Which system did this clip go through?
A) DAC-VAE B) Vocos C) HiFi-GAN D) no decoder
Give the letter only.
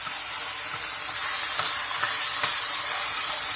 D